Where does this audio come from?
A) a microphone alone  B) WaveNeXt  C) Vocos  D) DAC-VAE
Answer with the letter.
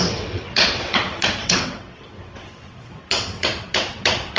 B